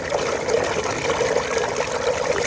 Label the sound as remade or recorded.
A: recorded